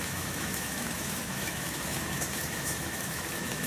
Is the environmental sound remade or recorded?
remade